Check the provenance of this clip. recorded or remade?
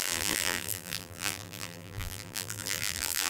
remade